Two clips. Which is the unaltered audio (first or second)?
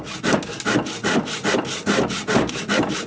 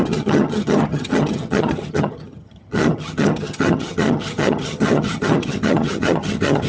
first